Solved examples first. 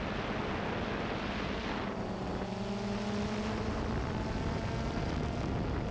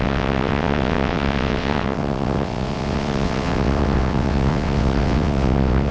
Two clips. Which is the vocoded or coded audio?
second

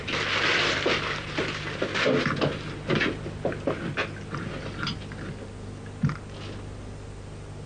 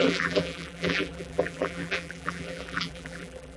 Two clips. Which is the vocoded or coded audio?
second